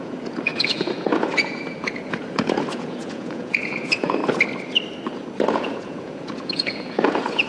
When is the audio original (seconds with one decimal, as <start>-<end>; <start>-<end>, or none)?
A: 4.2-5.5